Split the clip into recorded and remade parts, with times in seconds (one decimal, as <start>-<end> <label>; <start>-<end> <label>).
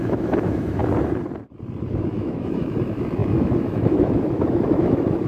0.0-0.8 remade; 0.8-1.9 recorded; 1.9-5.3 remade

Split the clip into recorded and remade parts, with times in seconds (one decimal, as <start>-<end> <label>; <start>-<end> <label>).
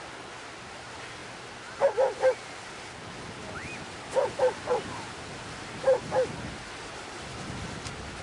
0.0-8.2 recorded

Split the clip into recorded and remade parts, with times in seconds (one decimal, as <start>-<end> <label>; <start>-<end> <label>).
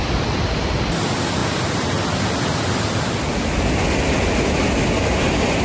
0.0-5.6 recorded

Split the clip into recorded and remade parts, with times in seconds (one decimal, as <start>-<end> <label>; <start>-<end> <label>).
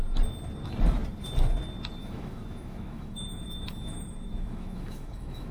0.0-2.0 recorded; 2.0-5.5 remade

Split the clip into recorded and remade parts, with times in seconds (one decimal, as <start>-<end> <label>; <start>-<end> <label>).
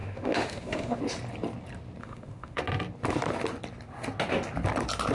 0.0-1.0 remade; 1.0-2.0 recorded; 2.0-2.6 remade; 2.6-5.1 recorded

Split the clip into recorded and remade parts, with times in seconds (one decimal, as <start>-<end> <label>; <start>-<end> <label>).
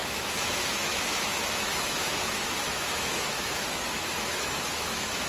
0.0-5.3 remade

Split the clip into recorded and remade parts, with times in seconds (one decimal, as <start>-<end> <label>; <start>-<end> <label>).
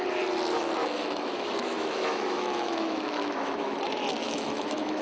0.0-0.8 recorded; 0.8-3.8 remade; 3.8-4.2 recorded; 4.2-5.0 remade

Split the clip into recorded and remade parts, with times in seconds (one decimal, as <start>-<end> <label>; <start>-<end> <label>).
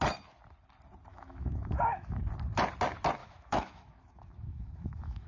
0.0-1.1 recorded; 1.1-2.2 remade; 2.2-3.2 recorded; 3.2-5.3 remade